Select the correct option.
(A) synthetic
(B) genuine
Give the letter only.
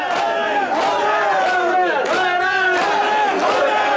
B